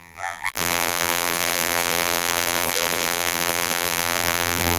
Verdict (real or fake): fake